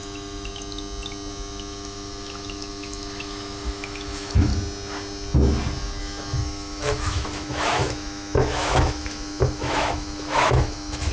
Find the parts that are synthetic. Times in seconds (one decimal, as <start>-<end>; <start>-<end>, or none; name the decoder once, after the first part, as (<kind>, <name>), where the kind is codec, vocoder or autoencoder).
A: 0.0-0.5 (autoencoder, DAC-VAE); 1.3-4.5; 6.0-11.1

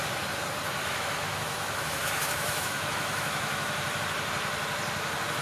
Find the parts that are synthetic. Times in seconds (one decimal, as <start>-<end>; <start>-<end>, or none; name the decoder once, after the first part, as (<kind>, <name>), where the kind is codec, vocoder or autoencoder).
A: 0.8-4.0 (autoencoder, DAC-VAE)

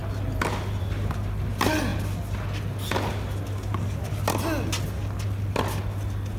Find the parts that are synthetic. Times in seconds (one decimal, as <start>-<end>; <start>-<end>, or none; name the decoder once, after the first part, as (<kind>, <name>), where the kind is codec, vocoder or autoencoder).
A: none